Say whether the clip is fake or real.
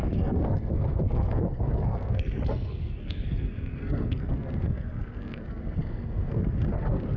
fake